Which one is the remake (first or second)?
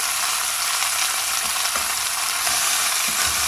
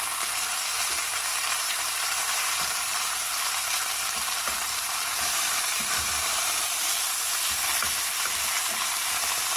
second